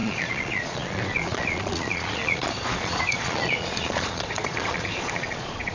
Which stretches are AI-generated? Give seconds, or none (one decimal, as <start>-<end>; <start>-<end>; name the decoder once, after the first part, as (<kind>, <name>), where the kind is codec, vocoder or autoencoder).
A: 0.0-5.7 (vocoder, Vocos)